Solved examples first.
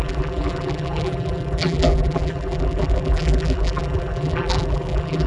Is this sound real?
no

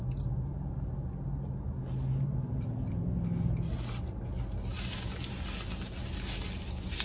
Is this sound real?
yes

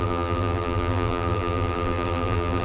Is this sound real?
no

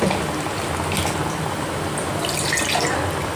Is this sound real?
yes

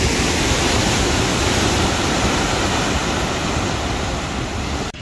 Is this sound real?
yes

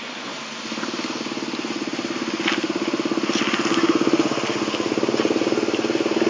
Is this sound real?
yes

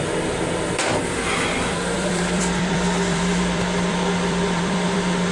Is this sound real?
no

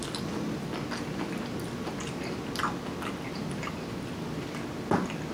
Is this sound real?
yes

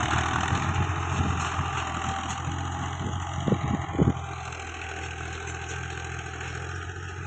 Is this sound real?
yes